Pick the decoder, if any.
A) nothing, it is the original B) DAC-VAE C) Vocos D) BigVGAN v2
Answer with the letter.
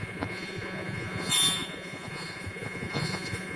C